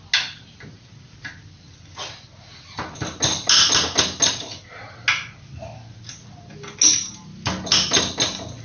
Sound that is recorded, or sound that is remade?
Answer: recorded